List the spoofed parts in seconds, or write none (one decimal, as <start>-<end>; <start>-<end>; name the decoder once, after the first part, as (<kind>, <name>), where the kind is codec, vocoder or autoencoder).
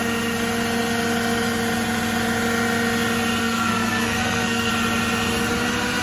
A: 3.4-4.7 (codec, SNAC)